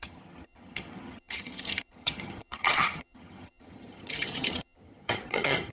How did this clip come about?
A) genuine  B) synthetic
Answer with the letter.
B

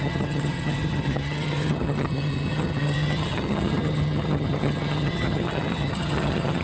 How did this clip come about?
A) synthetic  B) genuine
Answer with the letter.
A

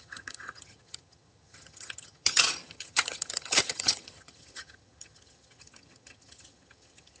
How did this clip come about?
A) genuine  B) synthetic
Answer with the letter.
B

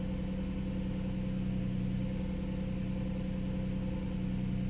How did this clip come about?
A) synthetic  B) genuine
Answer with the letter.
B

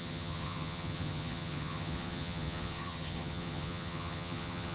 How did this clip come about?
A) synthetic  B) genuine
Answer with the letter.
A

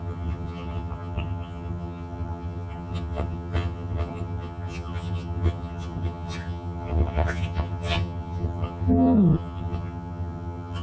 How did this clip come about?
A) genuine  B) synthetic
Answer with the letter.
B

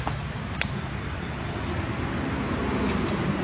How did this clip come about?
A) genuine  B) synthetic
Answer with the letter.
A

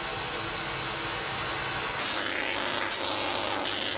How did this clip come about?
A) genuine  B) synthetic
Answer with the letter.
A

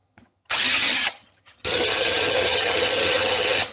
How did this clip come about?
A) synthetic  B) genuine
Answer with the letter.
A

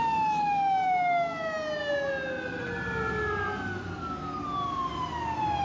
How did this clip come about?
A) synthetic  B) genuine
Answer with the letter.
B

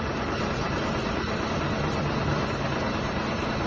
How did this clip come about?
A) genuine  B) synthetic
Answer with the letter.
A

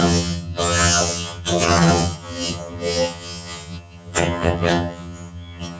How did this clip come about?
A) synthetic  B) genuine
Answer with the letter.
A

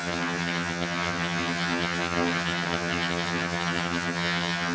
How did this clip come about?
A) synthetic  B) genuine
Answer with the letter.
A